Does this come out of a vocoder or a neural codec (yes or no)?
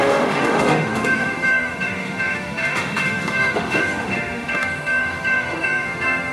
yes